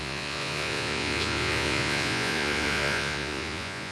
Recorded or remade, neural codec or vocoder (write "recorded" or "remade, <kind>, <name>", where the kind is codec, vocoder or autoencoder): remade, vocoder, Vocos